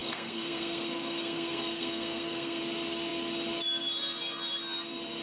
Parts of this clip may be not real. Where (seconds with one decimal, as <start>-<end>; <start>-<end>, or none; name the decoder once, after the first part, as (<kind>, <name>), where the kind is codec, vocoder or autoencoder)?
0.0-2.6 (codec, SNAC)